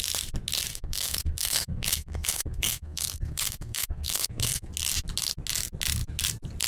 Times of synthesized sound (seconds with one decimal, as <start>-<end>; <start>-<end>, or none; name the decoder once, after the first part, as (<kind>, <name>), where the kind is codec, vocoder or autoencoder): 0.7-4.7 (codec, SNAC)